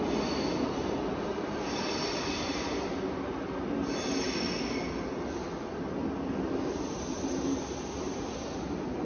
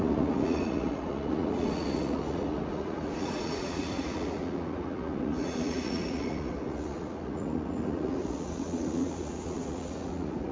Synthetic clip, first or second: second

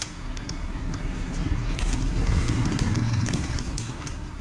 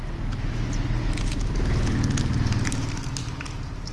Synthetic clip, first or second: first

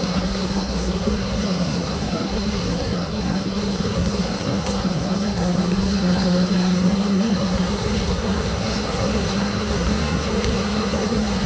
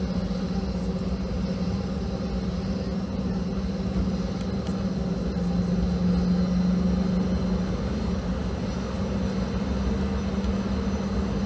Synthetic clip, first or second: first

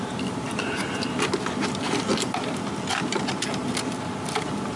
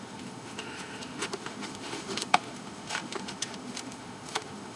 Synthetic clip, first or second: second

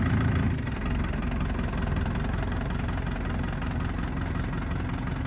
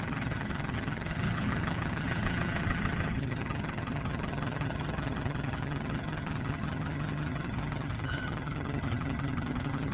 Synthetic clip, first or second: second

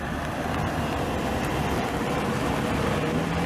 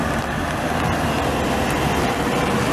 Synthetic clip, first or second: first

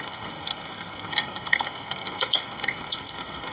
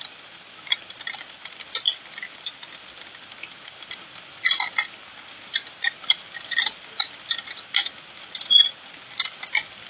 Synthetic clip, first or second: first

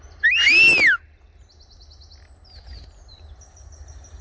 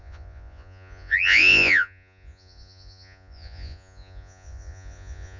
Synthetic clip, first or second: second